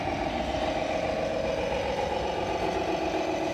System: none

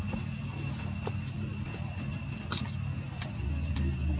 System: none